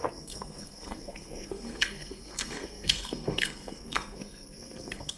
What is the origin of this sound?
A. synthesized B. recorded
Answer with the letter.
A